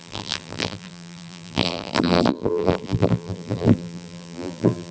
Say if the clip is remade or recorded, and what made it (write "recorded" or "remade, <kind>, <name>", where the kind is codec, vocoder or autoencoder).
remade, vocoder, BigVGAN v2